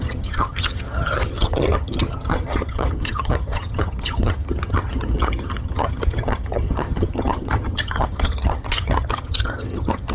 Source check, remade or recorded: remade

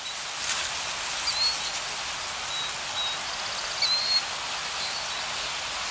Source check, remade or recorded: recorded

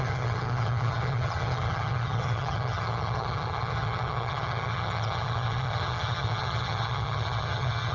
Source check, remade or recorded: remade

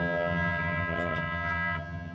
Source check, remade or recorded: remade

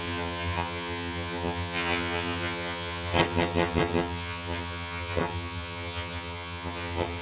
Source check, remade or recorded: remade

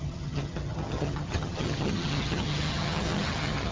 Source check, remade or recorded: remade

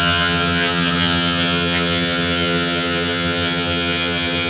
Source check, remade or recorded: remade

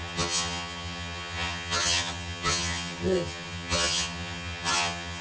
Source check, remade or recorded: remade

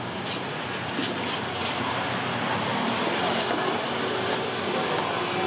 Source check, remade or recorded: recorded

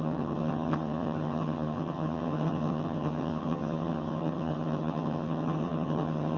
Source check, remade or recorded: remade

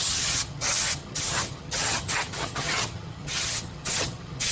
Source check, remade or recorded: remade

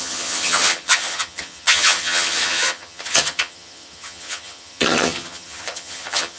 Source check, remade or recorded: remade